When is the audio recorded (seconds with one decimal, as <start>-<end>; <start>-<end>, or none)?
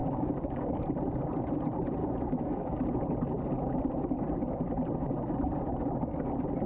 0.7-2.0; 2.8-6.7